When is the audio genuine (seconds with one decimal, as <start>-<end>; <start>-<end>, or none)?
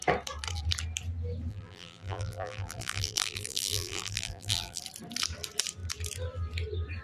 0.0-1.5; 4.8-7.0